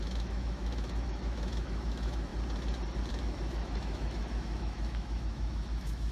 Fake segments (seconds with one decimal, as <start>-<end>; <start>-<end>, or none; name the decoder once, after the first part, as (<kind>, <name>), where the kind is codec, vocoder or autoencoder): 0.0-2.3 (autoencoder, DAC-VAE); 3.1-6.1